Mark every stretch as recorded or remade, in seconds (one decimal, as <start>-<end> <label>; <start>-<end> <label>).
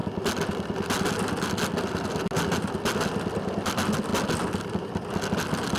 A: 0.0-5.8 recorded